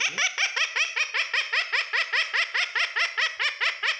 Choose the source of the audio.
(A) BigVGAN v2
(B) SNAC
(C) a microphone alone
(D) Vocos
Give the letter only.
C